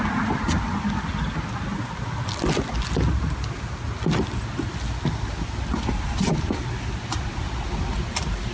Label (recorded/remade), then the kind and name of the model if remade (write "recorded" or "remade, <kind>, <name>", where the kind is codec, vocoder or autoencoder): recorded